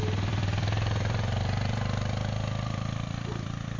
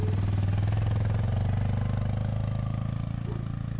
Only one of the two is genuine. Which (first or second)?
second